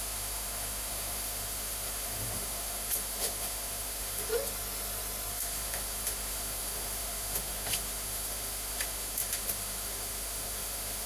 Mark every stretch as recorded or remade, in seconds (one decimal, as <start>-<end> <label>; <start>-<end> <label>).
0.0-4.3 remade; 4.3-5.3 recorded; 5.3-11.1 remade